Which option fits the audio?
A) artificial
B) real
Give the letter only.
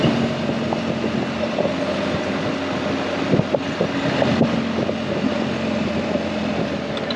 B